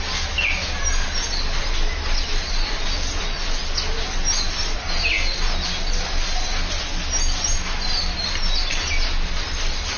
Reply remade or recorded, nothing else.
recorded